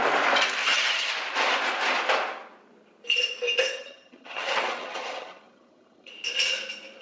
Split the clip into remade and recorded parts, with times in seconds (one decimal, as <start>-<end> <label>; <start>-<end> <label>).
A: 0.0-0.6 recorded; 0.6-1.1 remade; 1.1-3.7 recorded; 3.7-6.1 remade; 6.1-7.0 recorded